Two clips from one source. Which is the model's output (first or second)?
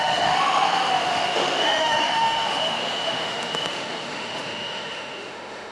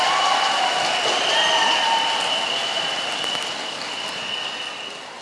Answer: first